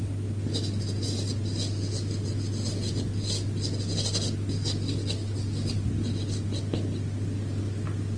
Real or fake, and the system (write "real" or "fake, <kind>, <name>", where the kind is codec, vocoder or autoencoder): real